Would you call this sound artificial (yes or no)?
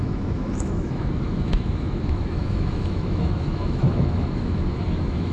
yes